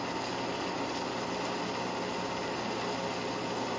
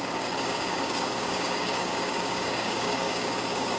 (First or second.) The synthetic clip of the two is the second